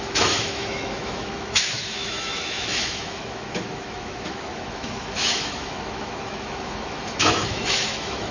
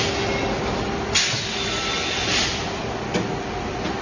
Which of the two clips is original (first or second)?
second